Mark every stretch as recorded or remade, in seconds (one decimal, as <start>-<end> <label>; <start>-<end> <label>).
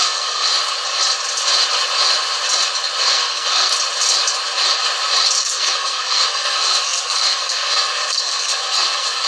0.0-0.5 remade; 0.5-3.0 recorded; 3.0-3.7 remade; 3.7-5.4 recorded; 5.4-9.3 remade